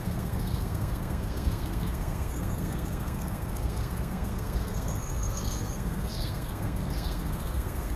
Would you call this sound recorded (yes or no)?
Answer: no